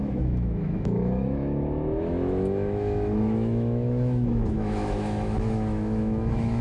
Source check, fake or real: fake